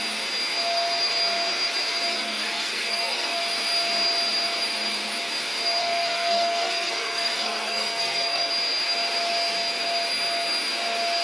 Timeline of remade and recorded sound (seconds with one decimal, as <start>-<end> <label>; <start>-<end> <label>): 0.0-2.1 recorded; 2.1-3.4 remade; 3.4-5.8 recorded; 5.8-8.5 remade; 8.5-11.2 recorded